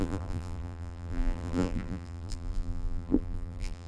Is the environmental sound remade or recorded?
remade